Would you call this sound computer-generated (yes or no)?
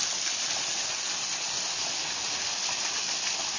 no